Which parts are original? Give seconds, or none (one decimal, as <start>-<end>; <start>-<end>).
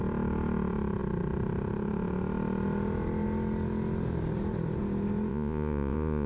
0.0-5.3